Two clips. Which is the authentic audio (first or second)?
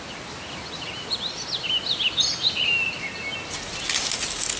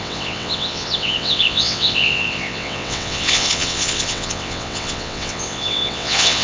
first